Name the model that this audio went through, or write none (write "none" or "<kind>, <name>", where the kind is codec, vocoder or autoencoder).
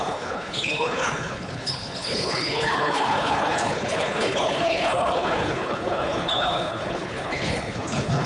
codec, HILCodec